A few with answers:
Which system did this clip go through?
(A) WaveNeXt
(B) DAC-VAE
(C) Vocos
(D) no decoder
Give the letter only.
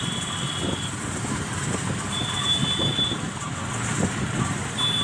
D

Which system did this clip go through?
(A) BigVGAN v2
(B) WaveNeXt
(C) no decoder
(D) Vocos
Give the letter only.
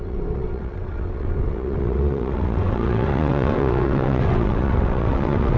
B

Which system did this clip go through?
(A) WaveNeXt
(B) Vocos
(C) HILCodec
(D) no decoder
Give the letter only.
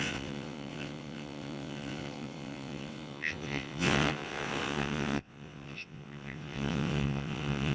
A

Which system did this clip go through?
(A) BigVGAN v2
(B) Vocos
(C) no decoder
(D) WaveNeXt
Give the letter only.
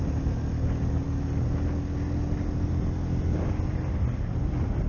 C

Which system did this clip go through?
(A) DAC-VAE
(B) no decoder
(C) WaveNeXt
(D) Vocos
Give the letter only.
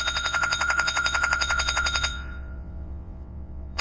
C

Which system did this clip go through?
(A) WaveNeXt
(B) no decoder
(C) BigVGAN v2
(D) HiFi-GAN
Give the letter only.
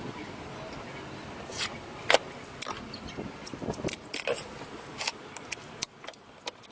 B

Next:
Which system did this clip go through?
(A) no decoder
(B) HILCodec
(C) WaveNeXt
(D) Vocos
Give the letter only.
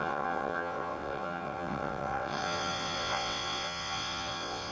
C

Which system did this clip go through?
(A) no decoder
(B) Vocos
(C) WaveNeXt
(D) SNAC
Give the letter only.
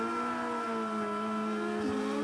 A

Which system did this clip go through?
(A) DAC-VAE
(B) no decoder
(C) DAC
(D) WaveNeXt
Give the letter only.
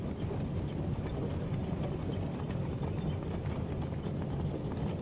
B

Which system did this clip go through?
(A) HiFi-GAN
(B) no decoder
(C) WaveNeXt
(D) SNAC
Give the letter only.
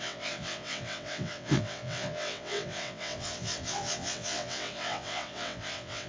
C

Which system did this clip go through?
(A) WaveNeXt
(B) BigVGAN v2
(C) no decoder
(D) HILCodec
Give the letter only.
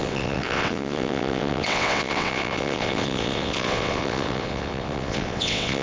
A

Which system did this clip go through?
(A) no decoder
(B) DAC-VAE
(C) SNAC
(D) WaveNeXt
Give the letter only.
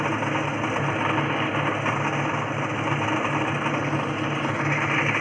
A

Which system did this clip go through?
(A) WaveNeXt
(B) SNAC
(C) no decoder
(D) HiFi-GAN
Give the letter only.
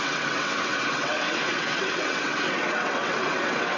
A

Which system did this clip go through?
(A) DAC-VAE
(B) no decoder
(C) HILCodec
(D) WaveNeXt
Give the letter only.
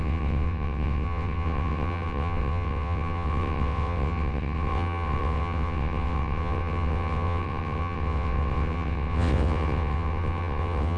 D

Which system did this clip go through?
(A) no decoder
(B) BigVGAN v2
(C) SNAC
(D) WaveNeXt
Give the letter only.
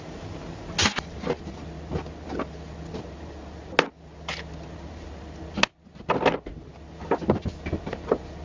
A